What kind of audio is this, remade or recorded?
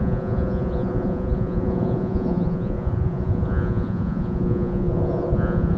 remade